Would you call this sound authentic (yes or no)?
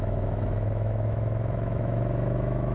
no